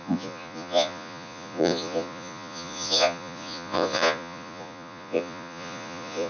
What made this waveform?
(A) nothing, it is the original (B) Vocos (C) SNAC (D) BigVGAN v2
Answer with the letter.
B